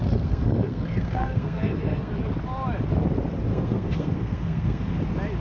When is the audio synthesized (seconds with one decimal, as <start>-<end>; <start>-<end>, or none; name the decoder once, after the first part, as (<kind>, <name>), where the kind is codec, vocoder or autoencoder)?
0.0-2.1 (codec, SNAC); 3.5-4.9